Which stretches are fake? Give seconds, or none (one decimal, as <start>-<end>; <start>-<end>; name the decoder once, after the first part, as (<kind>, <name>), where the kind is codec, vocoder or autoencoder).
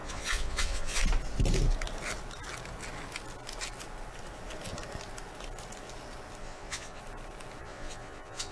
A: 0.0-1.0 (vocoder, Vocos); 6.4-7.0; 7.6-8.5